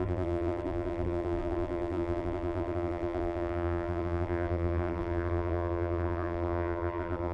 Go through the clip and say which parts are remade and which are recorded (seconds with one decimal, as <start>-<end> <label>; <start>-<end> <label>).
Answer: 0.0-7.3 remade